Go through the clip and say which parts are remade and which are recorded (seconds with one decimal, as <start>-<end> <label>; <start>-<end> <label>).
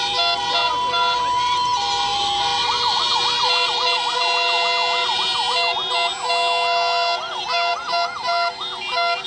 0.0-9.3 recorded